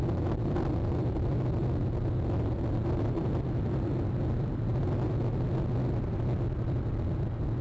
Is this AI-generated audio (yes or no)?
no